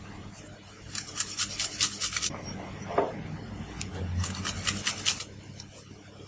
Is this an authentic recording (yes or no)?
yes